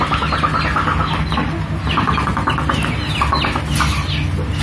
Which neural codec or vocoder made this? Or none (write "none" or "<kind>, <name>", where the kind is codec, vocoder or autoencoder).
none